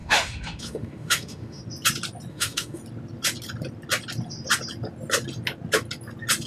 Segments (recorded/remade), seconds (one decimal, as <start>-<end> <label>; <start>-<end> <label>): 0.0-1.6 remade; 1.6-2.3 recorded; 2.3-2.8 remade; 2.8-6.5 recorded